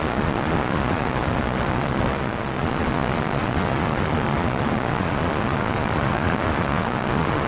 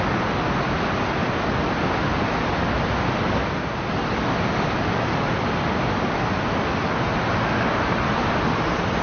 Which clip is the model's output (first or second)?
first